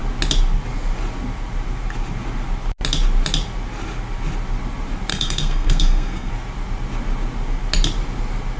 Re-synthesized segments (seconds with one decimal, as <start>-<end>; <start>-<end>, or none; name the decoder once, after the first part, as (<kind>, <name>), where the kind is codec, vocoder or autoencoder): 5.1-6.3 (codec, SNAC)